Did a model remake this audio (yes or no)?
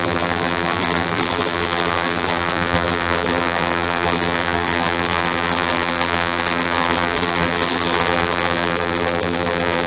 yes